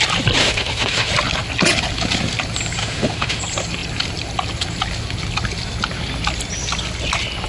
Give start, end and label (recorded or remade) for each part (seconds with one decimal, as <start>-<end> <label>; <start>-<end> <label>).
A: 0.0-0.4 recorded; 0.4-1.1 remade; 1.1-2.8 recorded; 2.8-3.4 remade; 3.4-7.5 recorded